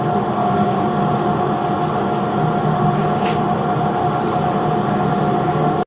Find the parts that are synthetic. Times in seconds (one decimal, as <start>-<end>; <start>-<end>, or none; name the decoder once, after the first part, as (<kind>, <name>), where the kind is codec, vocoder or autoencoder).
0.4-1.1 (codec, DAC)